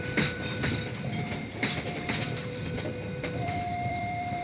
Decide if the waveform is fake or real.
fake